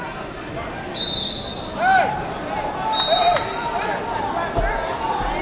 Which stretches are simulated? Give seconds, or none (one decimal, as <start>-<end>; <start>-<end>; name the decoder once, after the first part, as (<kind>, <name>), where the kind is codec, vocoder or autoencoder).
none